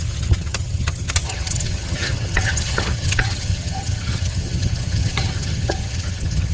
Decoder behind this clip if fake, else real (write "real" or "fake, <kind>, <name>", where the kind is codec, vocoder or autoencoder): fake, vocoder, HiFi-GAN